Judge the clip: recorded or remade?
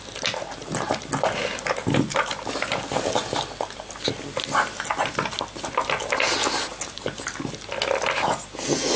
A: recorded